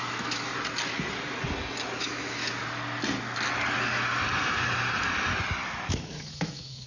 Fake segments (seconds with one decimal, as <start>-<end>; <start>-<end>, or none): 0.0-0.5; 2.0-2.4; 5.9-6.9